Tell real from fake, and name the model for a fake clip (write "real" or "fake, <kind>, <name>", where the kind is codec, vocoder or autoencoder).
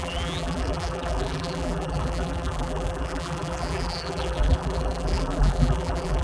fake, vocoder, BigVGAN v2